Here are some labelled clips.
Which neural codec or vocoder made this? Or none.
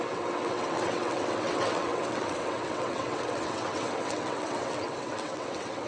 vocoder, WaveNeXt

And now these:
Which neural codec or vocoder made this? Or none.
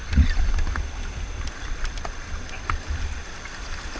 none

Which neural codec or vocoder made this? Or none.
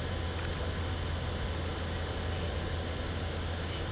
none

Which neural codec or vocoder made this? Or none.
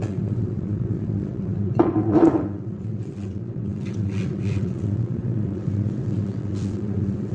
vocoder, WaveNeXt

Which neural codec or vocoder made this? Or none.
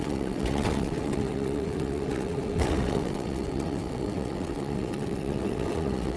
vocoder, WaveNeXt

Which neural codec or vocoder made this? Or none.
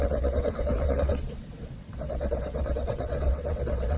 vocoder, WaveNeXt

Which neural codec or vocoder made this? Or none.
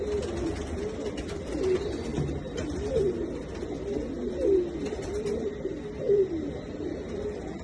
none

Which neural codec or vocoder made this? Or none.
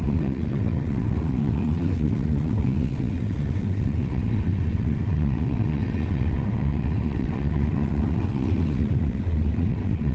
vocoder, WaveNeXt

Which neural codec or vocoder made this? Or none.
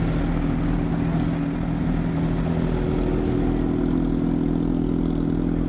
none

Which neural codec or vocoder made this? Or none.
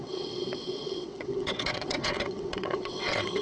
vocoder, WaveNeXt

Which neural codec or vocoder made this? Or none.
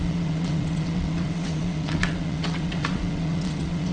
vocoder, WaveNeXt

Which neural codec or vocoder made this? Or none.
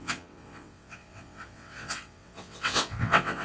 vocoder, WaveNeXt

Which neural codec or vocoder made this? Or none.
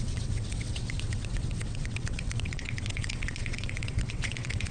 vocoder, WaveNeXt